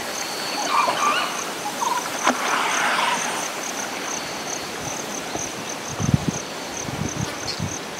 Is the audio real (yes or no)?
yes